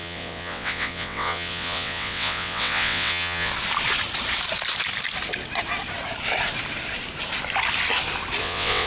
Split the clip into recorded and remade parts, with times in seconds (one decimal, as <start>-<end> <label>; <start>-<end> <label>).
0.0-3.5 remade; 3.5-8.4 recorded; 8.4-8.9 remade